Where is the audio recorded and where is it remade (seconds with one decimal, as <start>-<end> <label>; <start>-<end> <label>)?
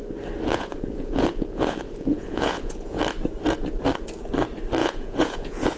0.0-0.5 recorded; 0.5-3.0 remade; 3.0-4.8 recorded; 4.8-5.8 remade